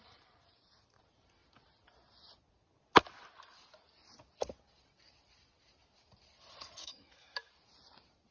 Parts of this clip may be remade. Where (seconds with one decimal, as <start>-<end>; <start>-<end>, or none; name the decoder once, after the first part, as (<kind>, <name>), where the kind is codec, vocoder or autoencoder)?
6.8-7.5 (autoencoder, DAC-VAE)